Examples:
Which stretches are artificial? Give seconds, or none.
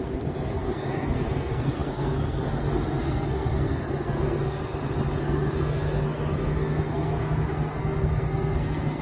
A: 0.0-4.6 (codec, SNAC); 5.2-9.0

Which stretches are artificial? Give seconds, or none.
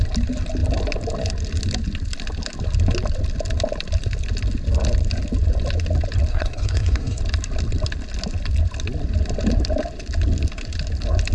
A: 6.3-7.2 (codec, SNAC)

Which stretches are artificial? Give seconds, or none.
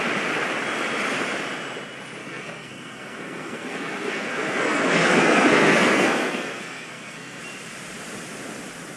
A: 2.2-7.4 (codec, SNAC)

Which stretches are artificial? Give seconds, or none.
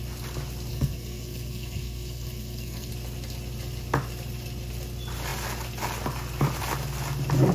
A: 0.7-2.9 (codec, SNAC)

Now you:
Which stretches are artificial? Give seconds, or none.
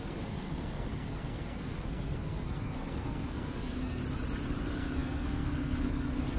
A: 0.0-4.0 (codec, SNAC); 4.6-6.4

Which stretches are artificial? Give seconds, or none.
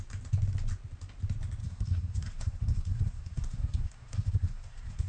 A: 1.6-5.1 (codec, SNAC)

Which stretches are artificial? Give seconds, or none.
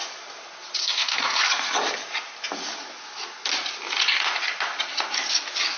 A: 0.8-1.4 (codec, SNAC)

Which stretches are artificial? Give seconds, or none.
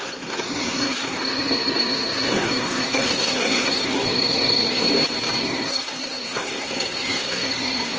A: 0.0-4.9 (codec, SNAC); 5.4-8.0